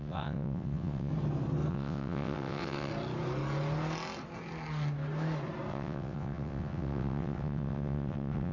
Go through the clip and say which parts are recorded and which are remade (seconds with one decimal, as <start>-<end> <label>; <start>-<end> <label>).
0.0-1.1 remade; 1.1-1.7 recorded; 1.7-2.9 remade; 2.9-5.7 recorded; 5.7-8.5 remade